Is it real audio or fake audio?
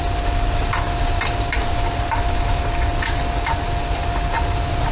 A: real